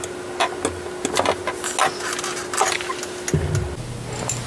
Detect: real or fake real